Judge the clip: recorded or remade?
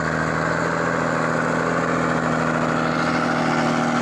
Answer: recorded